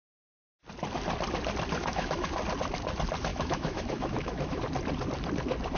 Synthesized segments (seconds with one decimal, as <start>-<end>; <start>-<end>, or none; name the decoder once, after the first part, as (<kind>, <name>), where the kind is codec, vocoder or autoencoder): 1.8-2.3 (autoencoder, DAC-VAE); 3.3-4.6